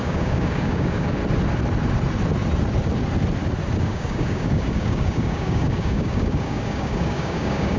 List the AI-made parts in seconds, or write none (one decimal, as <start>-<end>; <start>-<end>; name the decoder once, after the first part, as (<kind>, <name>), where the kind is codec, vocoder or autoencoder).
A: 0.0-1.2 (codec, DAC); 3.8-7.8